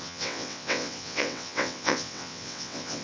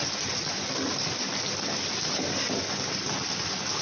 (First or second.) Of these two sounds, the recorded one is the second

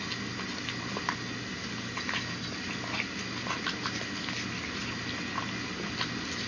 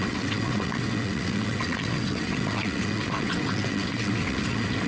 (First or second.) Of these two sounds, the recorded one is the first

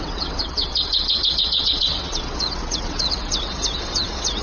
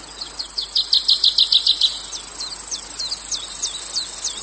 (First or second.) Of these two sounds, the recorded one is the second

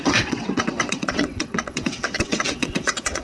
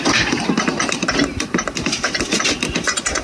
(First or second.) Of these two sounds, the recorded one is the second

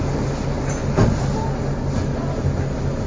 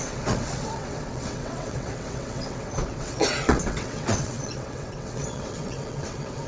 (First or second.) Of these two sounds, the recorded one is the first